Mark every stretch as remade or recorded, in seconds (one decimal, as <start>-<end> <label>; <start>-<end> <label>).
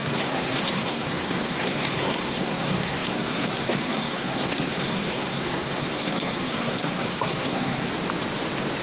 0.0-7.9 remade; 7.9-8.8 recorded